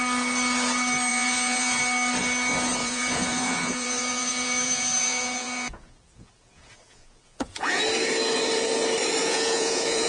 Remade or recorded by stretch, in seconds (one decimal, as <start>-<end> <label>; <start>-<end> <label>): 0.0-1.1 recorded; 1.1-1.8 remade; 1.8-2.8 recorded; 2.8-7.8 remade; 7.8-9.2 recorded; 9.2-10.1 remade